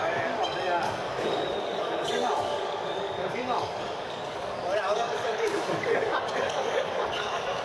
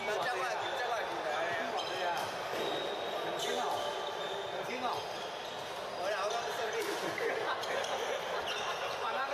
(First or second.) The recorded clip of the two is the second